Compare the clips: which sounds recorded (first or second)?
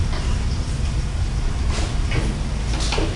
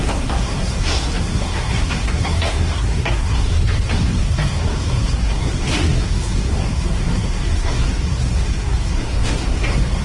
first